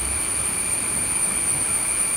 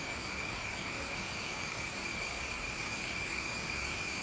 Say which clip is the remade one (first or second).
second